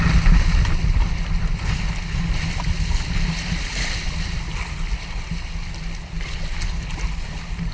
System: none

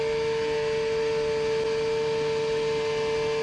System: none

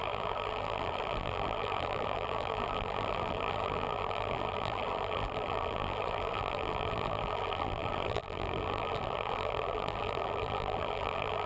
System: vocoder, BigVGAN v2